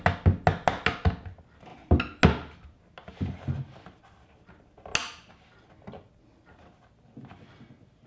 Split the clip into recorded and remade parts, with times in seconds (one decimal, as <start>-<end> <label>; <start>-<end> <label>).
0.0-8.1 recorded

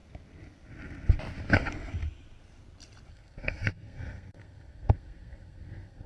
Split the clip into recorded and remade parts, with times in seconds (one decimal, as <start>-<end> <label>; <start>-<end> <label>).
0.0-3.1 recorded; 3.1-6.1 remade